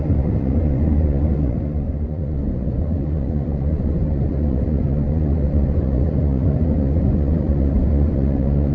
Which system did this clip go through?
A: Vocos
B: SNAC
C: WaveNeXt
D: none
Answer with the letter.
A